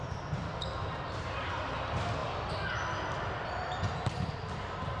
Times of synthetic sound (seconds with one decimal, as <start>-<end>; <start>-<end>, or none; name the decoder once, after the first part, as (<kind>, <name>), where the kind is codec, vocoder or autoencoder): none